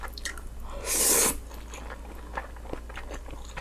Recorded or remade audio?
recorded